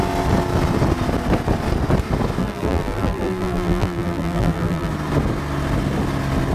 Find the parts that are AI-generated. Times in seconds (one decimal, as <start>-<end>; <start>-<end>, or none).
2.4-4.9